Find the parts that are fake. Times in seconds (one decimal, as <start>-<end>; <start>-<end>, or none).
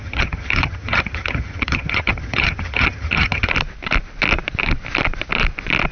0.0-3.5